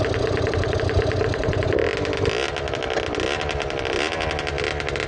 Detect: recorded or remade recorded